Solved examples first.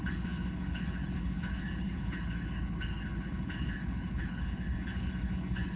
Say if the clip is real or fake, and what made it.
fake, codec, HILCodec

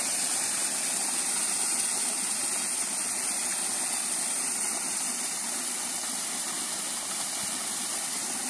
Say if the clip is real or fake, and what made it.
real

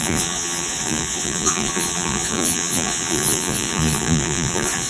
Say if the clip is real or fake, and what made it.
fake, vocoder, Vocos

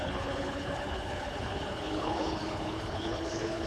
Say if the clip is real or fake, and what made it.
fake, codec, HILCodec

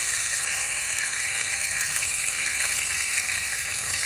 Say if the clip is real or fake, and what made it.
fake, codec, SNAC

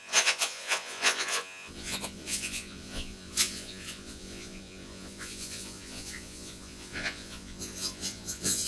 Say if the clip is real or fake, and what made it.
fake, vocoder, Vocos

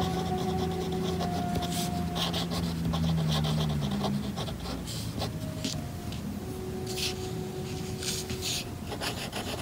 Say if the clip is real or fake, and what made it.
real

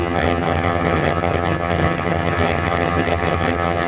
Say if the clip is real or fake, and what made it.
fake, vocoder, HiFi-GAN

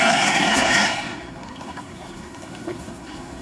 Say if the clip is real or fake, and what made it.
fake, codec, SNAC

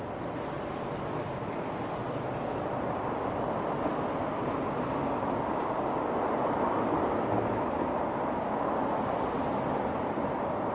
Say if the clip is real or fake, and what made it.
real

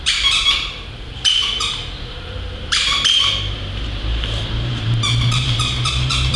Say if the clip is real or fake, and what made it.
fake, vocoder, BigVGAN v2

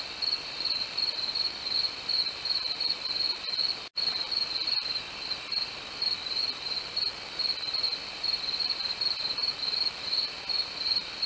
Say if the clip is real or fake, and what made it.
real